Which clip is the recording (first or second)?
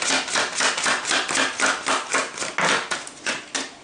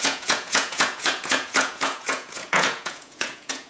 first